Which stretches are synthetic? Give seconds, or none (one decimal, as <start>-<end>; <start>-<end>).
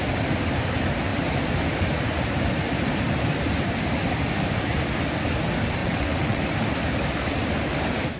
5.8-6.4